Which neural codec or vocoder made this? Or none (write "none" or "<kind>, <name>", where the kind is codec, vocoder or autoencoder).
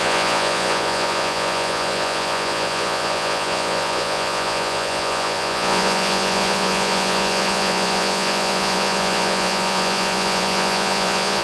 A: vocoder, Vocos